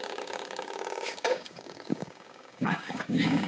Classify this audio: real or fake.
fake